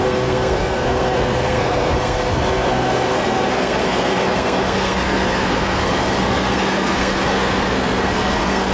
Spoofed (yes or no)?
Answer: yes